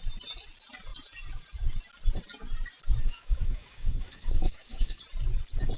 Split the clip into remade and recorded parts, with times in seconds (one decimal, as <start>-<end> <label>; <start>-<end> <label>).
0.0-3.0 recorded; 3.0-5.0 remade; 5.0-5.8 recorded